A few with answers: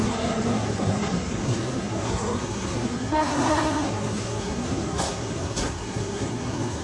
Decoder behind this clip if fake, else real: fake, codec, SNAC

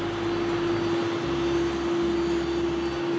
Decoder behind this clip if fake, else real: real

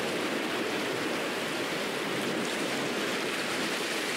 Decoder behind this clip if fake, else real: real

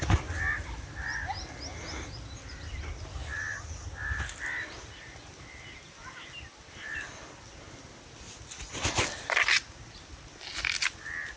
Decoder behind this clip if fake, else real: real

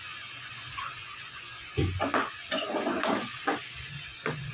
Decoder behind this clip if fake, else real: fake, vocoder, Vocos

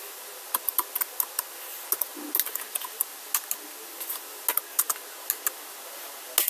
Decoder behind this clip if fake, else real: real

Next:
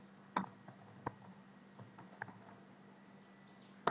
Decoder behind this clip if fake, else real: real